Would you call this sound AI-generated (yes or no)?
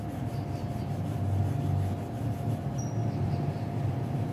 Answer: no